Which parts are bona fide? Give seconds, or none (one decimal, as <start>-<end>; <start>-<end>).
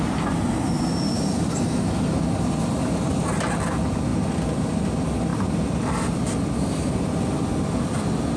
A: 0.0-5.3; 6.2-8.4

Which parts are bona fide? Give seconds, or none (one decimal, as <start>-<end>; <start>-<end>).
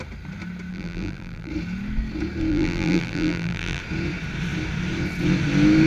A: 0.0-0.7; 1.5-2.5; 3.8-5.9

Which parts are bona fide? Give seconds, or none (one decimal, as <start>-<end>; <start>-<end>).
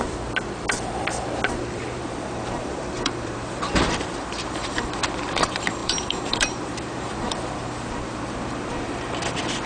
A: 0.0-1.6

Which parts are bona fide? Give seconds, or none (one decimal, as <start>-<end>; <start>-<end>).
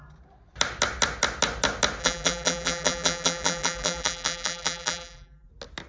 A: 0.0-2.0; 5.5-5.9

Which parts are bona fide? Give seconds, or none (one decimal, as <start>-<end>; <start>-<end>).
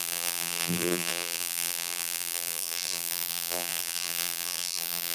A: none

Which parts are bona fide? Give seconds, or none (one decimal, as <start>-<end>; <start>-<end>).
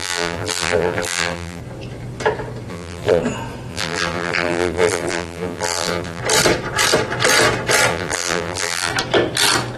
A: 1.6-2.7; 3.2-3.7; 6.2-7.9; 8.9-9.8